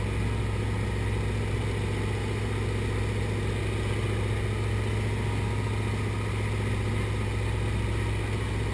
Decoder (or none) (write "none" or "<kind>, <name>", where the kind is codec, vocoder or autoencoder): none